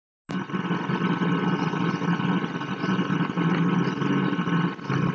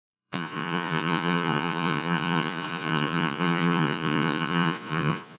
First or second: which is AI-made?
second